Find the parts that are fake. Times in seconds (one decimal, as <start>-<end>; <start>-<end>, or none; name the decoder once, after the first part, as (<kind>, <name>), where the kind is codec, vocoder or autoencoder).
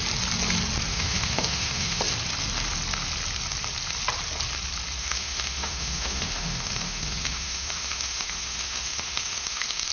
0.9-2.0 (autoencoder, DAC-VAE); 5.0-9.9